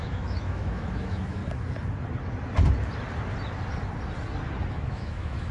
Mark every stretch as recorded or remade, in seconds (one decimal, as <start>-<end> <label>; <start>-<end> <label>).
0.0-1.4 remade; 1.4-4.7 recorded; 4.7-5.5 remade